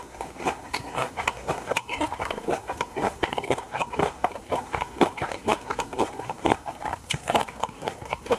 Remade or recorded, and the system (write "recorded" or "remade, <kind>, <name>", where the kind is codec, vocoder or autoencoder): remade, codec, SNAC